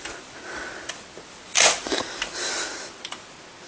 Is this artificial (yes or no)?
no